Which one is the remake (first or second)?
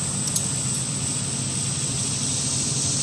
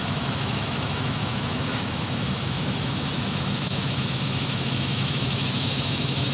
second